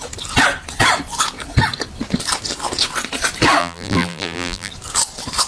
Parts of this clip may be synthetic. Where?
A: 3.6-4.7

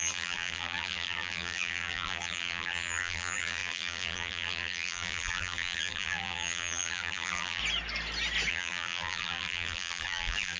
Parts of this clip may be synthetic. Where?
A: 0.0-7.6; 8.5-10.6

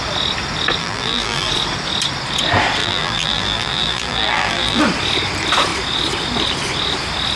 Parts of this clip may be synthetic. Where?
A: 0.8-1.5; 2.8-4.8

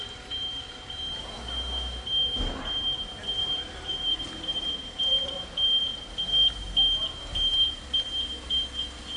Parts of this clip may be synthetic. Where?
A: 3.4-4.7

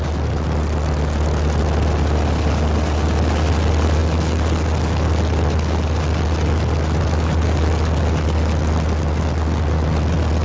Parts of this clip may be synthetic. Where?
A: none

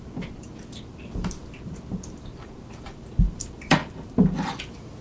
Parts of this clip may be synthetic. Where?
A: 0.0-1.4; 2.1-5.0

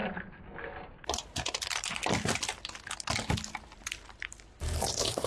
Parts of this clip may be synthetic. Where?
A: 1.1-2.0; 3.7-5.3

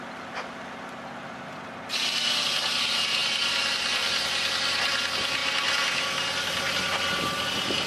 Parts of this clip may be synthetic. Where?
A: none